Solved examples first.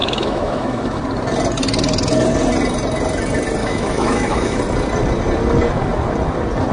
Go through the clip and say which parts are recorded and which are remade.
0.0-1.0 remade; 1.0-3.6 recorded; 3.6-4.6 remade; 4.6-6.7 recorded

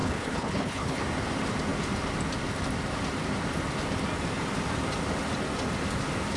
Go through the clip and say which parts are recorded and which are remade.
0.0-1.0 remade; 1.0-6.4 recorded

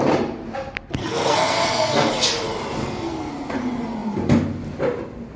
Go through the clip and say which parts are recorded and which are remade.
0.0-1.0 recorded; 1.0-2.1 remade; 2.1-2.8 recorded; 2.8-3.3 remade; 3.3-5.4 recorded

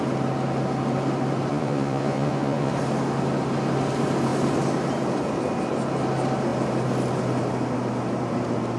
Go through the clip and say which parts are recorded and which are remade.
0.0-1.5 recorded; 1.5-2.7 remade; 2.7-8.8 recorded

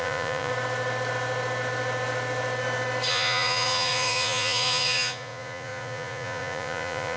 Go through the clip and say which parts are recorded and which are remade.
0.0-0.5 remade; 0.5-3.1 recorded; 3.1-7.2 remade

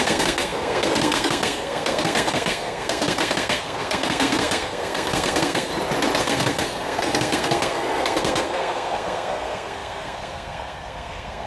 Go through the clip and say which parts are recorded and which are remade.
0.0-5.7 remade; 5.7-6.2 recorded; 6.2-11.5 remade

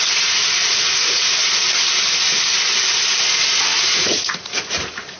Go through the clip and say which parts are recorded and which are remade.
0.0-0.6 recorded; 0.6-1.3 remade; 1.3-3.7 recorded; 3.7-4.8 remade; 4.8-5.2 recorded

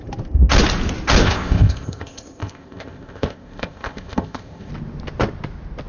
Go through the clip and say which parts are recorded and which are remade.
0.0-1.2 recorded; 1.2-4.7 remade; 4.7-5.9 recorded